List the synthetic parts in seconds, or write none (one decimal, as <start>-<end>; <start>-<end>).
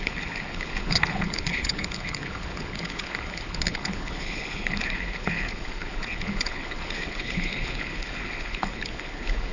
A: 0.0-9.5